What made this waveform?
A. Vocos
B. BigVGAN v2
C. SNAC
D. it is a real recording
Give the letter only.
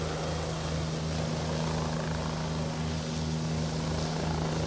D